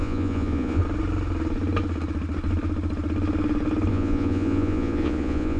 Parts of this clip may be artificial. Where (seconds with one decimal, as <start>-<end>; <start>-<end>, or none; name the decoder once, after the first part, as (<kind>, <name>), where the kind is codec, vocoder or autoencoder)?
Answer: 0.0-0.8 (vocoder, Vocos); 3.9-5.6